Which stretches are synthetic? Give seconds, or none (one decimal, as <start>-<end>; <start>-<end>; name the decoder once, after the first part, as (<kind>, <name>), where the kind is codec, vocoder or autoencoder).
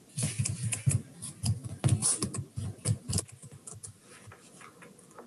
none